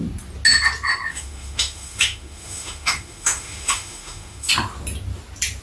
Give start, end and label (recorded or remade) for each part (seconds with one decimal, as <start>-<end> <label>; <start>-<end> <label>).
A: 0.0-1.1 recorded; 1.1-4.5 remade; 4.5-5.6 recorded